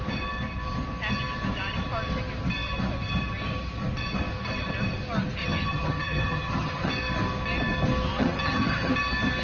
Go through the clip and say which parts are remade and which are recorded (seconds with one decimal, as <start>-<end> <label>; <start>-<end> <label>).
0.0-5.4 recorded; 5.4-6.9 remade; 6.9-8.2 recorded; 8.2-8.9 remade; 8.9-9.4 recorded